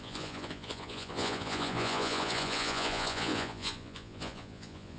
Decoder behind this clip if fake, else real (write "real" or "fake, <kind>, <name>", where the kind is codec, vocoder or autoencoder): fake, vocoder, Vocos